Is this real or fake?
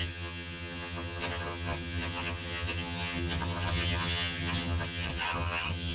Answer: fake